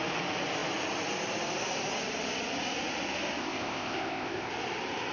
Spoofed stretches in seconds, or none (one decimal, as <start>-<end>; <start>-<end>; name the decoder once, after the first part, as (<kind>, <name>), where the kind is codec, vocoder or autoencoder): 3.4-4.5 (codec, ZipCodec)